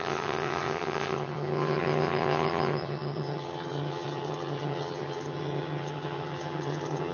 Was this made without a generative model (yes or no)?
no